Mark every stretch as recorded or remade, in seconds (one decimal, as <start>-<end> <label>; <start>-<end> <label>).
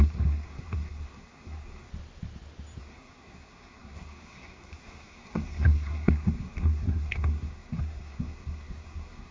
0.0-1.9 remade; 1.9-2.8 recorded; 2.8-9.3 remade